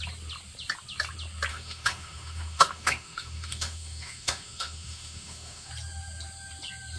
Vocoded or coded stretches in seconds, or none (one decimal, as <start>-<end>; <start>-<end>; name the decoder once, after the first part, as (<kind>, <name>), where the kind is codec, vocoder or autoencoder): 1.5-5.7 (autoencoder, DAC-VAE)